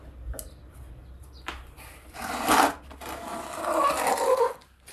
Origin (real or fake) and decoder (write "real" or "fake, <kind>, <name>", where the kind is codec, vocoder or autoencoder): real